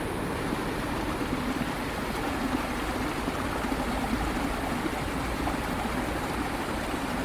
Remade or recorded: recorded